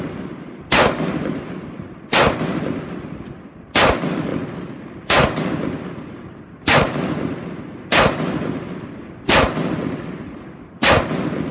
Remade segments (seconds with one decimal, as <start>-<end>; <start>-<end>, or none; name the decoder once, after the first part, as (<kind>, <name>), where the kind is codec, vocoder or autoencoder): 0.0-11.5 (vocoder, BigVGAN v2)